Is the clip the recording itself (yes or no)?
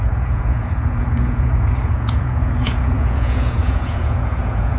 no